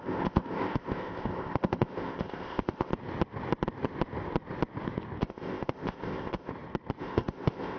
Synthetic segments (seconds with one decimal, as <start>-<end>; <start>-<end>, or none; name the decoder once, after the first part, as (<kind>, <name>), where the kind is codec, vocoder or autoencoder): 0.0-2.9 (codec, ZipCodec); 5.2-6.5; 7.0-7.8